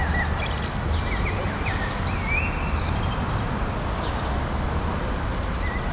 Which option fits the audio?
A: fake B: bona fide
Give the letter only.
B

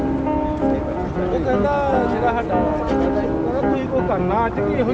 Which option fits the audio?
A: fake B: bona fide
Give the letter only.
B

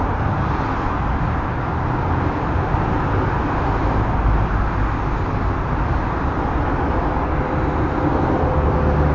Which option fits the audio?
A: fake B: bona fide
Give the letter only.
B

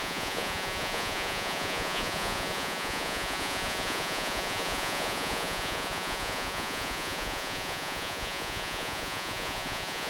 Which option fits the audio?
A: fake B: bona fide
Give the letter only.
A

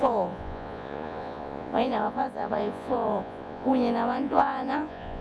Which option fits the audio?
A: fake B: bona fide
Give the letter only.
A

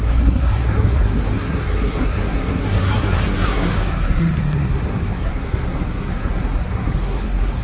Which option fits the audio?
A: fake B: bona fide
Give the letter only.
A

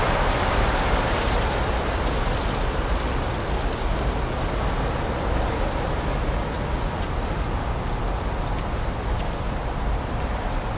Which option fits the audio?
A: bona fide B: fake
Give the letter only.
A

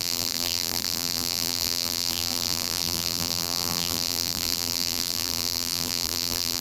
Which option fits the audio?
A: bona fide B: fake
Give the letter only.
B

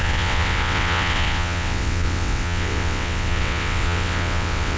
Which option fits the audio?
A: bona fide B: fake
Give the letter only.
B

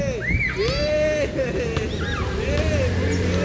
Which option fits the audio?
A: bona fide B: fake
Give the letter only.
A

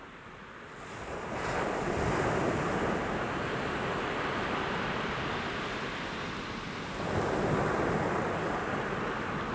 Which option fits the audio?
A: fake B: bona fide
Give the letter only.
B